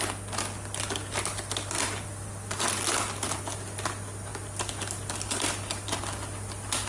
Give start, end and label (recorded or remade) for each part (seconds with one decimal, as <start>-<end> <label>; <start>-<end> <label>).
0.0-6.9 recorded